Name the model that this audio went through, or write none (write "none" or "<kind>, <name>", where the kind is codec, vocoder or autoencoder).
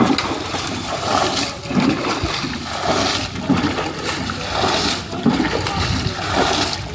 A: none